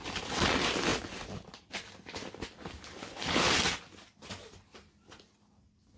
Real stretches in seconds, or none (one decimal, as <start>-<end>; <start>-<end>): 0.0-3.0; 3.5-6.0